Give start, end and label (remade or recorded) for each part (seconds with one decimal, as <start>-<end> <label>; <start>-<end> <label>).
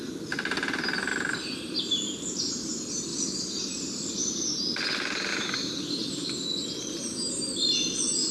0.0-1.1 recorded; 1.1-2.4 remade; 2.4-3.1 recorded; 3.1-4.1 remade; 4.1-5.3 recorded; 5.3-6.3 remade; 6.3-8.3 recorded